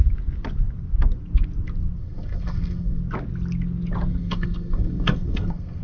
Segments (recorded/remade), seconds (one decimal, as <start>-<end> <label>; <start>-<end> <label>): 0.0-2.0 recorded; 2.0-3.0 remade; 3.0-4.1 recorded; 4.1-5.8 remade